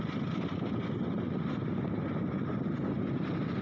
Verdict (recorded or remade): recorded